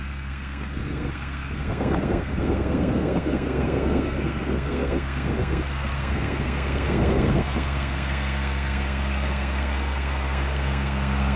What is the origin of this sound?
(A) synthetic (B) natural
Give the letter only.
A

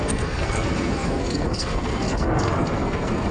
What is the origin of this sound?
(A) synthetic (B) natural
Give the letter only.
A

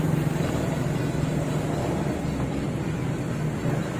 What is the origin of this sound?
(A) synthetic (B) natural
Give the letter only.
B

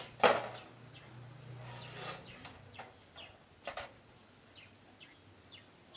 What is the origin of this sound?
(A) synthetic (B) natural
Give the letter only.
B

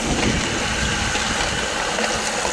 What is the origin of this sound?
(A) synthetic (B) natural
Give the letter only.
B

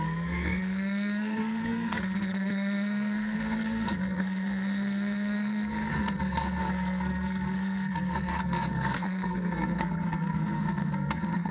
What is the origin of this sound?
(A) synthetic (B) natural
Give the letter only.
A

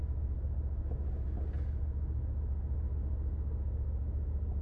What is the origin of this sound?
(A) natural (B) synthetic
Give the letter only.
A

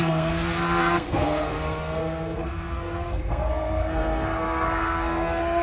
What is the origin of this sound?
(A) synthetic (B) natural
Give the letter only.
A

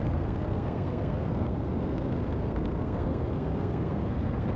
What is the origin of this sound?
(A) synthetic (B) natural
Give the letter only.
A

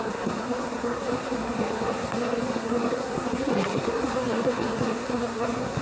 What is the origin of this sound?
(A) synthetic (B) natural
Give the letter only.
A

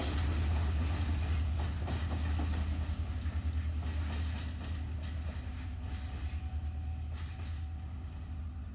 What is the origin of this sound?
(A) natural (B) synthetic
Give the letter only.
A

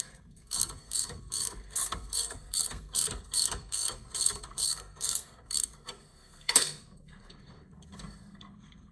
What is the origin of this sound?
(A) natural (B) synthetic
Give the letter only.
B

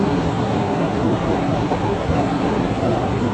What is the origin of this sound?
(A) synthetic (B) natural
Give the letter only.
A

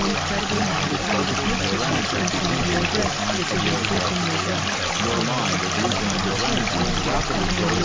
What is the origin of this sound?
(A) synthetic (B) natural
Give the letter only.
B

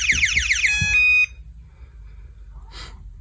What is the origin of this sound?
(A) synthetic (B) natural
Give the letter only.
B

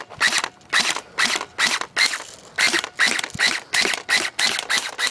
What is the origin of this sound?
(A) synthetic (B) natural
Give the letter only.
B